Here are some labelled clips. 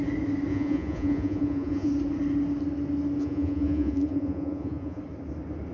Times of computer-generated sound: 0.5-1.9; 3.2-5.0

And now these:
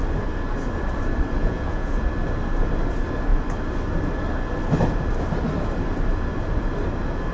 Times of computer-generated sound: 1.4-2.0

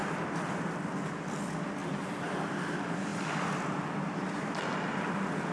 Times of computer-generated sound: 0.0-0.9; 1.8-2.4

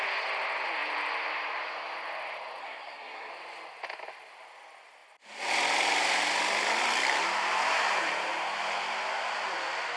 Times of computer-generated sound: 2.6-3.3

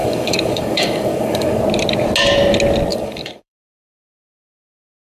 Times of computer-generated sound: 0.0-1.6; 2.9-3.7

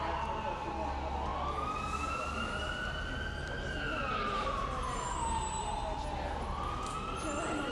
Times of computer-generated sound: none

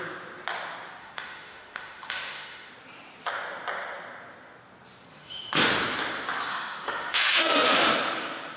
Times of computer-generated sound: 1.0-2.7; 5.1-5.7; 6.5-7.9